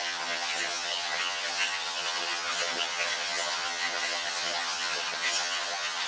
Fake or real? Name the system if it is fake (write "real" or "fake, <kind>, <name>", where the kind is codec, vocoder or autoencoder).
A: fake, vocoder, HiFi-GAN